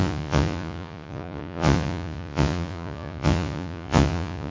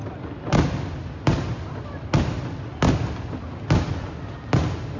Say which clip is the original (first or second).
second